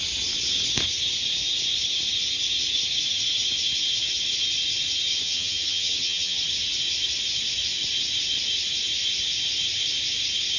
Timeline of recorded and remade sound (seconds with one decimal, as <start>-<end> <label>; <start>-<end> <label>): 0.0-5.1 recorded; 5.1-6.4 remade; 6.4-10.6 recorded